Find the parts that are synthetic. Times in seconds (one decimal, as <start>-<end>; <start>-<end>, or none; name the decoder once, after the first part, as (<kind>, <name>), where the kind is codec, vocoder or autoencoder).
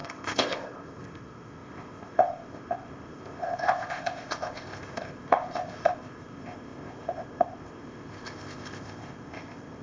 0.0-9.8 (codec, ZipCodec)